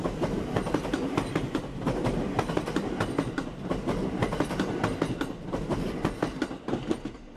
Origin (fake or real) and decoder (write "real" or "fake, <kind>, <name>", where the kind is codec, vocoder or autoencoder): real